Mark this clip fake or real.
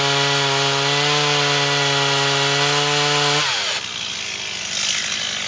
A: real